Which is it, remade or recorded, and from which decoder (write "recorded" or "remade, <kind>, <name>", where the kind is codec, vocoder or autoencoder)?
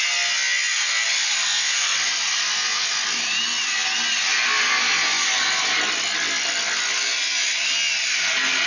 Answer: recorded